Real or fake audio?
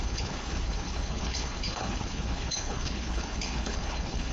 fake